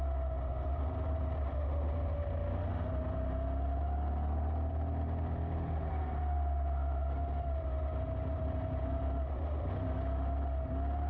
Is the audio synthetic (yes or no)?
no